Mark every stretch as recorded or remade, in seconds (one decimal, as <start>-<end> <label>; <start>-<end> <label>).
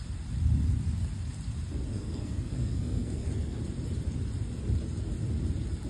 0.0-1.9 recorded; 1.9-3.6 remade; 3.6-5.9 recorded